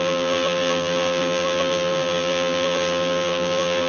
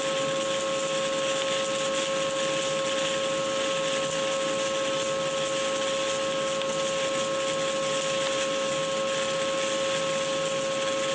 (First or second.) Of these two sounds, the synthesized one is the first